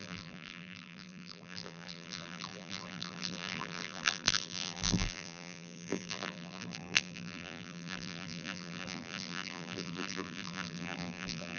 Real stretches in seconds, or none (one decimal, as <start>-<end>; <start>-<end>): none